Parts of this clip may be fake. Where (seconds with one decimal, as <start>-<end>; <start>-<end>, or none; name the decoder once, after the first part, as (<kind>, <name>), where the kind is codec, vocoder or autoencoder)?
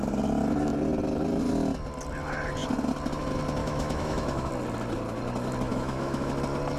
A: 3.6-4.5 (autoencoder, DAC-VAE); 5.7-6.3